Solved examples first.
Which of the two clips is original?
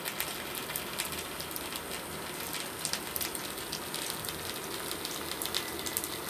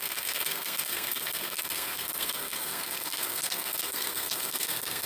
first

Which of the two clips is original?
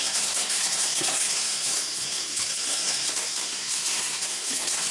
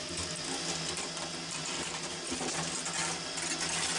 second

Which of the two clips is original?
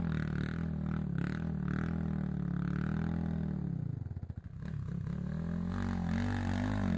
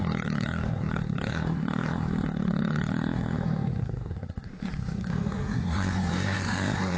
first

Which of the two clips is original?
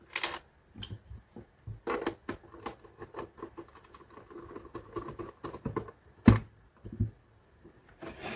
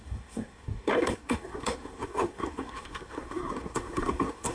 first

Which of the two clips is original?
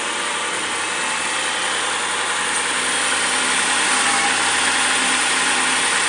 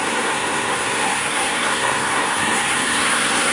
first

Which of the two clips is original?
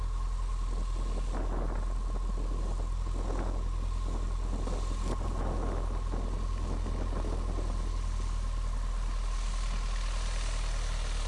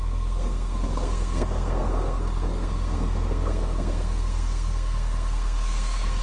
first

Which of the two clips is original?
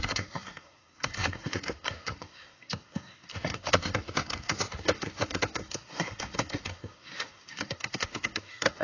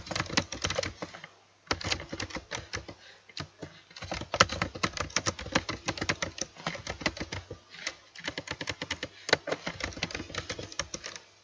second